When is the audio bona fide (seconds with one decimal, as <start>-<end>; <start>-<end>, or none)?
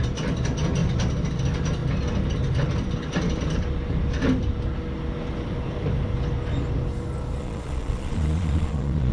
0.0-7.4